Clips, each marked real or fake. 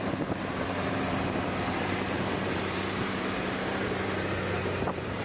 fake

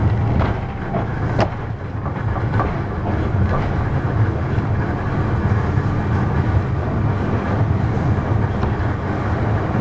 real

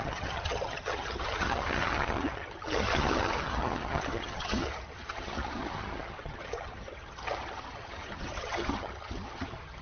fake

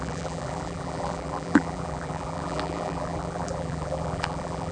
fake